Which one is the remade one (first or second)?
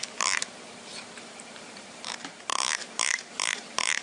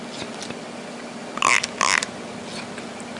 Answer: first